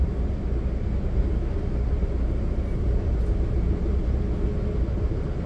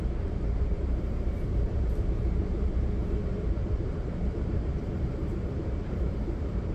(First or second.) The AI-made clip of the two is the second